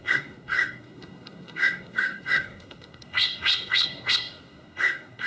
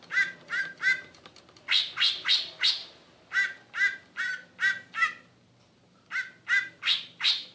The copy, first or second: first